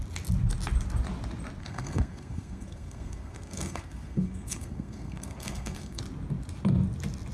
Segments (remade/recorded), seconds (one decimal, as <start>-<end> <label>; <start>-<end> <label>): 0.0-1.6 recorded; 1.6-6.0 remade; 6.0-7.3 recorded

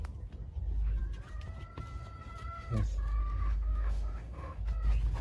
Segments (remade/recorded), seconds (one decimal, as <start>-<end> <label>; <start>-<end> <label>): 0.0-3.2 recorded; 3.2-4.6 remade; 4.6-5.2 recorded

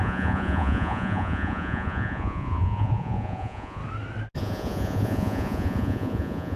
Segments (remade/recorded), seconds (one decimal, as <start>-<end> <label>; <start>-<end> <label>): 0.0-3.8 remade; 3.8-4.4 recorded; 4.4-6.6 remade

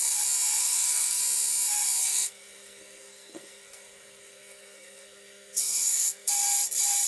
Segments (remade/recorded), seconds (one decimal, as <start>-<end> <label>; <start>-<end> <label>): 0.0-0.6 recorded; 0.6-1.2 remade; 1.2-2.0 recorded; 2.0-6.3 remade; 6.3-7.1 recorded